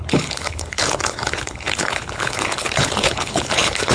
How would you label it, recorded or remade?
remade